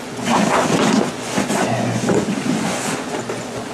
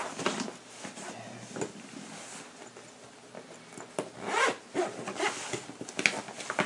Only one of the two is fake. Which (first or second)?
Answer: first